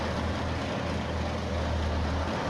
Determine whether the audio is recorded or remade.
recorded